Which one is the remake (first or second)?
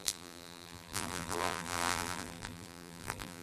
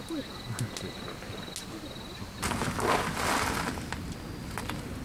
first